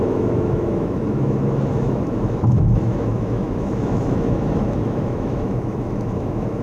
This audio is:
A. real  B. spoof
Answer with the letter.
B